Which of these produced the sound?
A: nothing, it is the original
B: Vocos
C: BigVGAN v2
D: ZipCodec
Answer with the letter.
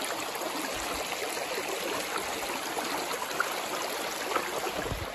A